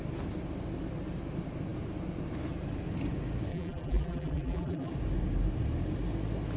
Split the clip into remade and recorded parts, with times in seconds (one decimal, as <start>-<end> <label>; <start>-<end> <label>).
0.0-3.5 recorded; 3.5-4.9 remade; 4.9-6.6 recorded